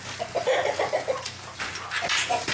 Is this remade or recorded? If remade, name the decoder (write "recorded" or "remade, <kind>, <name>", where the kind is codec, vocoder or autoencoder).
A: recorded